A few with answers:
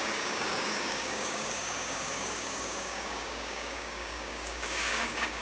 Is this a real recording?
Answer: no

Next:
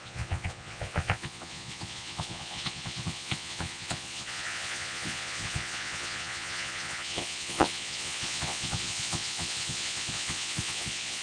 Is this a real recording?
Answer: no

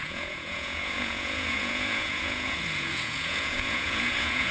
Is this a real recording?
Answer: no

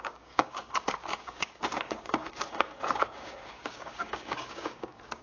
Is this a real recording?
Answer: no